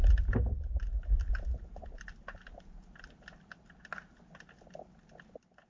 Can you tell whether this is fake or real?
real